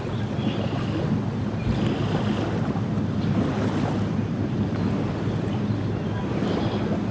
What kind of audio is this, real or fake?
real